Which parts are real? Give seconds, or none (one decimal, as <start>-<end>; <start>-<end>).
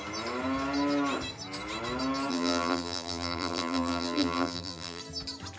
0.0-2.3; 5.0-5.6